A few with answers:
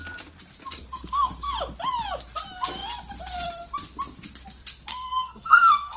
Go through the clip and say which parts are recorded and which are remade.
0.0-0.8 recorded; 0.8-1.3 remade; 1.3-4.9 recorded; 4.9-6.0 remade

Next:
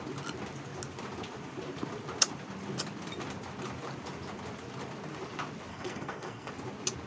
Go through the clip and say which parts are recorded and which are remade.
0.0-5.7 recorded; 5.7-6.5 remade; 6.5-7.1 recorded

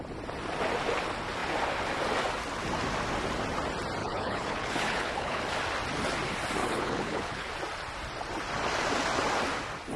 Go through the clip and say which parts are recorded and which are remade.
0.0-4.0 recorded; 4.0-5.4 remade; 5.4-6.6 recorded; 6.6-7.5 remade; 7.5-10.0 recorded

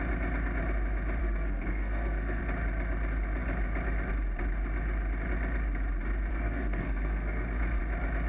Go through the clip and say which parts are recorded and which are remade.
0.0-1.2 recorded; 1.2-2.4 remade; 2.4-6.3 recorded; 6.3-7.8 remade; 7.8-8.3 recorded

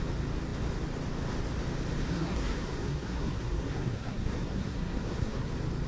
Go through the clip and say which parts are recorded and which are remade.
0.0-2.1 recorded; 2.1-5.5 remade; 5.5-5.9 recorded

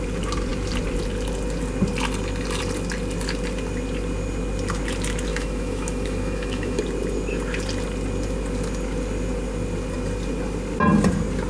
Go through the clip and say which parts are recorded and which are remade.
0.0-5.3 recorded; 5.3-6.8 remade; 6.8-11.5 recorded

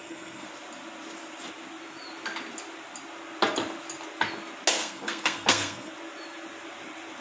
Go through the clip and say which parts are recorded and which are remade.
0.0-0.5 remade; 0.5-4.8 recorded; 4.8-5.9 remade; 5.9-7.2 recorded